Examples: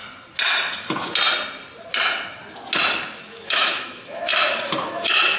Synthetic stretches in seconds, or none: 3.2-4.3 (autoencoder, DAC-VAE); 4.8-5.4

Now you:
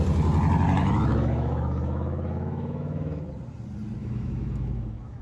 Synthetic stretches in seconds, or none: 0.8-3.3 (autoencoder, DAC-VAE); 4.0-5.2

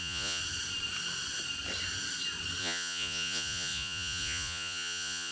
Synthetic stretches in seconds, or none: 0.0-0.4 (vocoder, Vocos); 2.6-5.3

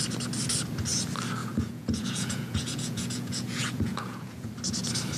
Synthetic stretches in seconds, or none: 1.4-4.5 (vocoder, Vocos)

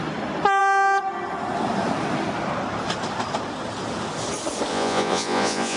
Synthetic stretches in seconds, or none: 4.7-5.8 (vocoder, Vocos)

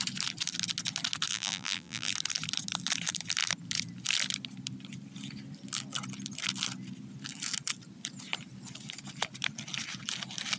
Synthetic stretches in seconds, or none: 1.3-2.1 (vocoder, BigVGAN v2)

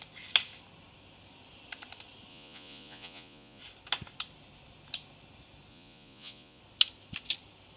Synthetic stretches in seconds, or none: 2.3-3.6 (vocoder, Vocos); 5.7-6.6

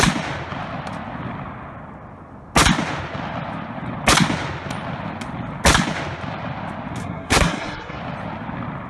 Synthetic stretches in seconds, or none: 7.0-8.0 (codec, SNAC)